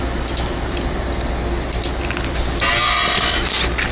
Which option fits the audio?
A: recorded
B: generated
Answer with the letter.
A